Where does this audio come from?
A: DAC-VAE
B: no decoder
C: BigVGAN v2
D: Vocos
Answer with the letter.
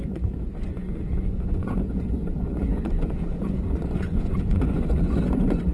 D